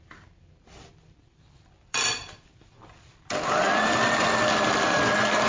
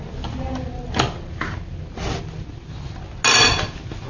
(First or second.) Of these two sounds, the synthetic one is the first